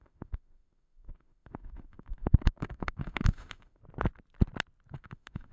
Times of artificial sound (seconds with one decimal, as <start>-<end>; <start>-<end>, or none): 0.0-3.8; 4.9-5.5